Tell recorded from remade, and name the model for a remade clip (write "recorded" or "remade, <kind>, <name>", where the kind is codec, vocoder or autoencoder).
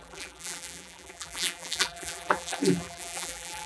remade, vocoder, BigVGAN v2